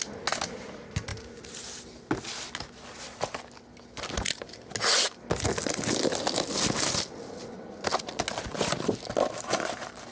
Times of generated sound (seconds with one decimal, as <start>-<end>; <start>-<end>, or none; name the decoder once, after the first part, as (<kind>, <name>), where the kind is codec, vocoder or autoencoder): none